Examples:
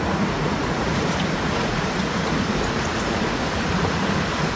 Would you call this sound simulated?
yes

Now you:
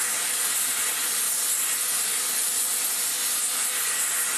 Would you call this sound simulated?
no